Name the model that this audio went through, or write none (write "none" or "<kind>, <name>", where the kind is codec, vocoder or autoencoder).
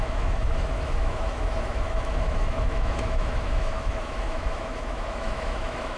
autoencoder, DAC-VAE